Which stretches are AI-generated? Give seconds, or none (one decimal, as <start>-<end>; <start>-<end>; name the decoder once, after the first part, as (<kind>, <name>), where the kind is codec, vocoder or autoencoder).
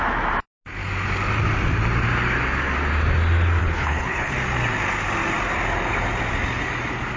3.6-4.3 (codec, HILCodec)